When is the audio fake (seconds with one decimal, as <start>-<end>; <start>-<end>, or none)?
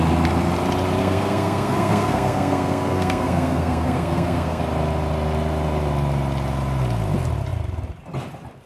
1.0-4.6